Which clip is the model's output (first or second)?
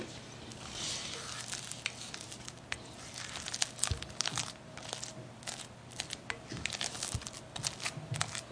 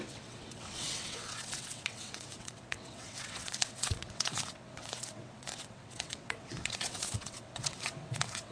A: second